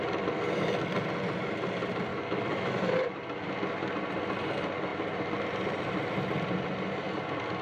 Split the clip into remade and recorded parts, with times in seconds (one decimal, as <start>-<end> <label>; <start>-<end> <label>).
0.0-2.1 recorded; 2.1-2.7 remade; 2.7-7.6 recorded